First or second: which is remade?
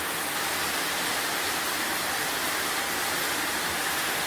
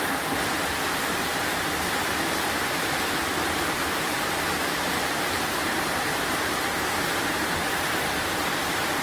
second